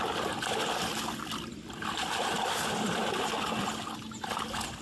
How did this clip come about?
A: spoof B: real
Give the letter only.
B